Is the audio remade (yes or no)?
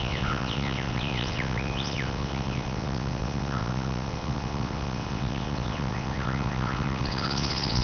yes